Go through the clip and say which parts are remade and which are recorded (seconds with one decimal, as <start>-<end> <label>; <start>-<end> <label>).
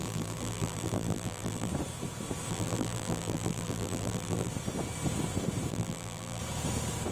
0.0-1.7 remade; 1.7-2.5 recorded; 2.5-4.5 remade; 4.5-5.7 recorded; 5.7-6.4 remade; 6.4-7.1 recorded